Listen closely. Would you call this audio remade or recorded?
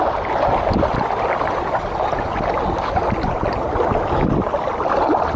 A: recorded